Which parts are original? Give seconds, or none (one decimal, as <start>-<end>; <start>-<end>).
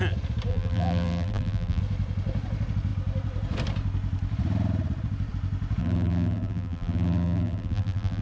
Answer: 0.0-0.5; 1.8-5.8